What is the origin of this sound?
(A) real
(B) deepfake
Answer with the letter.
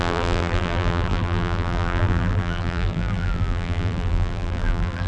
B